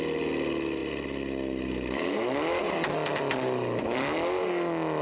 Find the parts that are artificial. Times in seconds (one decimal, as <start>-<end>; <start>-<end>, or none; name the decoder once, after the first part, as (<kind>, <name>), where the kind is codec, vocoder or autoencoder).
none